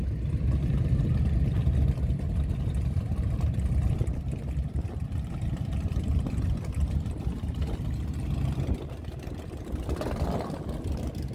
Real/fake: real